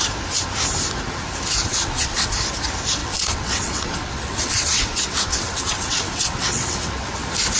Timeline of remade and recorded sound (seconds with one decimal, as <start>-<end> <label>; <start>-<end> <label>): 0.0-1.7 recorded; 1.7-2.3 remade; 2.3-3.0 recorded; 3.0-7.1 remade; 7.1-7.6 recorded